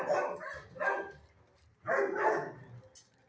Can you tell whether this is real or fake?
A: real